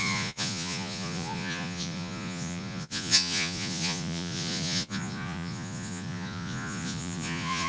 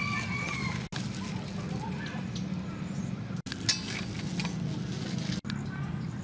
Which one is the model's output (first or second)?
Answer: first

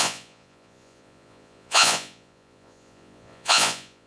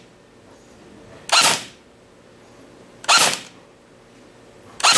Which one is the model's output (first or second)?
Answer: first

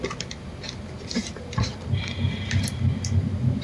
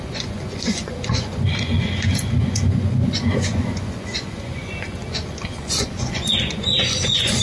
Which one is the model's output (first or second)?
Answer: second